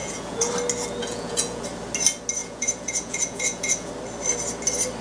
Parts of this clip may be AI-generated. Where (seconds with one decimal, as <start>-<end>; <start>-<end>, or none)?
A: 0.0-0.5; 1.0-1.6; 2.4-3.9